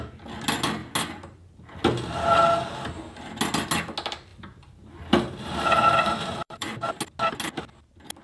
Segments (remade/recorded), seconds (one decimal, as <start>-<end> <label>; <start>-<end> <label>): 0.0-4.3 recorded; 4.3-6.9 remade; 6.9-8.2 recorded